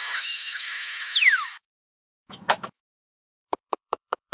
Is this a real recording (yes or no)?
no